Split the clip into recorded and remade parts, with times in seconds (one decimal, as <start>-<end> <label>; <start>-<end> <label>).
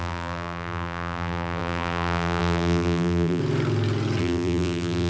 0.0-3.4 remade; 3.4-4.2 recorded; 4.2-5.1 remade